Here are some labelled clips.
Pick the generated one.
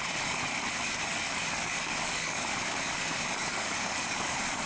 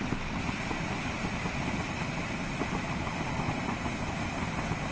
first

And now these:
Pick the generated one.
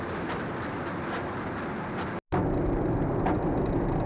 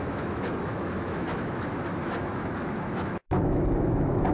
second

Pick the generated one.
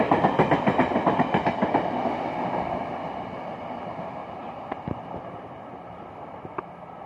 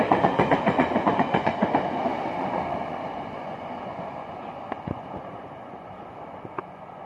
second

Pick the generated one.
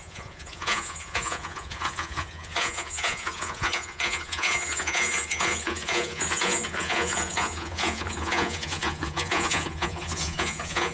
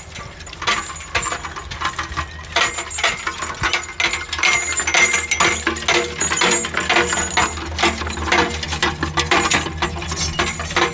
first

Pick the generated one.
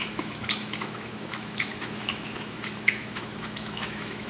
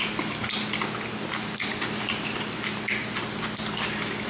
first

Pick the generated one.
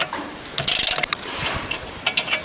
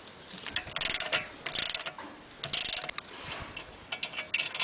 first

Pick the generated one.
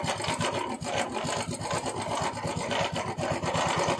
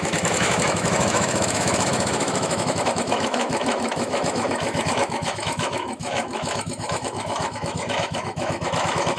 second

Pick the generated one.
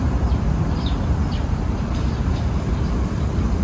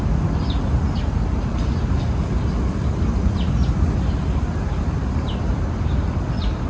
first